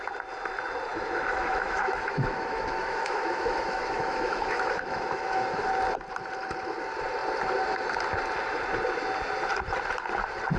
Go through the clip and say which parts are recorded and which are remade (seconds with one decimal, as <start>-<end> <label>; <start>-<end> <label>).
0.0-0.9 recorded; 0.9-5.6 remade; 5.6-10.6 recorded